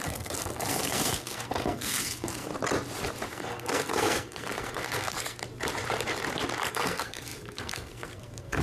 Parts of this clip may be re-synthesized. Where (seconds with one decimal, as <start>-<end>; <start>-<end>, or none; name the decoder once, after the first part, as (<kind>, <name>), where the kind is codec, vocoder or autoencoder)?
0.0-2.5 (codec, SNAC); 3.3-5.4; 6.7-8.6